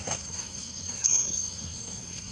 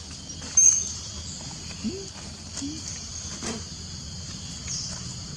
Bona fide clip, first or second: second